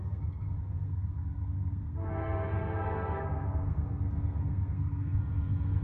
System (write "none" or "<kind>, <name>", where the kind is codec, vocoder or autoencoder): codec, SNAC